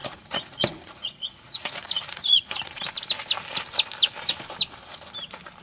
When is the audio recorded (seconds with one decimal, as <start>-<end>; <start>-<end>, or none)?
2.8-5.6